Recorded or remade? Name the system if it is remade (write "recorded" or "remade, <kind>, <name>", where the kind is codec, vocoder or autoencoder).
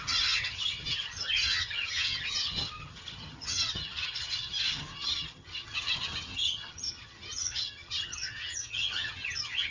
remade, vocoder, HiFi-GAN